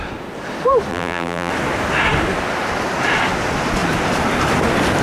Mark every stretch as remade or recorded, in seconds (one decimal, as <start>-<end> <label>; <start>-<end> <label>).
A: 0.0-0.9 recorded; 0.9-1.5 remade; 1.5-5.0 recorded